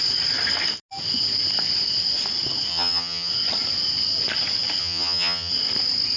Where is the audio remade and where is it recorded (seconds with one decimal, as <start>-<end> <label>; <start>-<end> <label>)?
0.0-2.7 recorded; 2.7-3.3 remade; 3.3-4.8 recorded; 4.8-5.5 remade; 5.5-6.2 recorded